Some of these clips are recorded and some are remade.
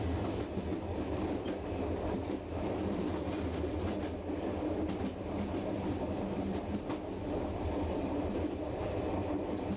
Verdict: recorded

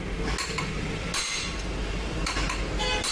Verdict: recorded